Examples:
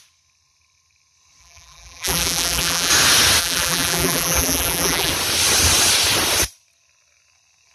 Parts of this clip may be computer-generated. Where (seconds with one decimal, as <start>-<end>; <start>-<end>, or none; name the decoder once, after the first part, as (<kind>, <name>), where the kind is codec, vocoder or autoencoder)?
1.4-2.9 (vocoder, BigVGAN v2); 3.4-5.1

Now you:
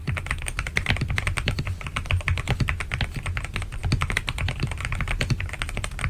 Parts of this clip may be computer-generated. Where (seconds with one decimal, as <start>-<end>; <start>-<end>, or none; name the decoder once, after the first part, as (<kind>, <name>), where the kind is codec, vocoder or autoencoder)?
0.0-1.6 (vocoder, BigVGAN v2)

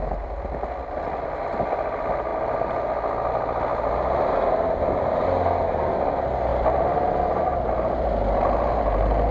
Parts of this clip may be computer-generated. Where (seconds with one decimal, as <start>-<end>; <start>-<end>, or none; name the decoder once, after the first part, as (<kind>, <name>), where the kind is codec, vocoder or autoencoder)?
0.0-0.9 (vocoder, BigVGAN v2); 6.5-8.7

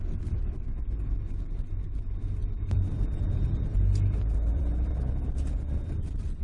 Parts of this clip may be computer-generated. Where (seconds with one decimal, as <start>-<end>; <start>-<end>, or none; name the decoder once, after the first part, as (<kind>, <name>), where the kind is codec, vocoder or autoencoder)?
2.4-4.9 (vocoder, BigVGAN v2)

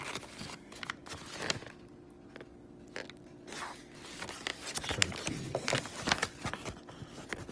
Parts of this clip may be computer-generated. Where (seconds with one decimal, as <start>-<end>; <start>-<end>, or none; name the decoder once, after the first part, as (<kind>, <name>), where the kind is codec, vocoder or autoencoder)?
none

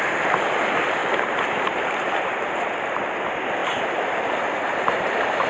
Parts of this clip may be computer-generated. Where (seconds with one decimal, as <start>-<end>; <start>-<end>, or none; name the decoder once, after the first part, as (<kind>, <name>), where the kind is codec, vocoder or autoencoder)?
1.0-2.8 (vocoder, BigVGAN v2); 3.6-5.5

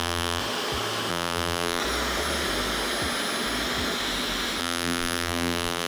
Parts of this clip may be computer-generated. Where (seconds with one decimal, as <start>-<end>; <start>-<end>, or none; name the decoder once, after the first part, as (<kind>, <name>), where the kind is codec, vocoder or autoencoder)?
0.0-0.4 (vocoder, BigVGAN v2); 1.1-1.8; 4.6-5.9

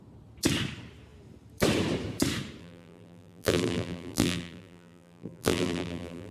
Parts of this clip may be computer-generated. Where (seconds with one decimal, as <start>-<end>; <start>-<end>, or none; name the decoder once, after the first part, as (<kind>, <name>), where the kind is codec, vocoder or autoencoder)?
2.6-6.3 (vocoder, BigVGAN v2)